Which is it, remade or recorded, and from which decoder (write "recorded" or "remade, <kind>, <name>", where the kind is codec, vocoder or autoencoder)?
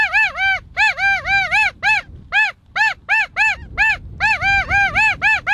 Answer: recorded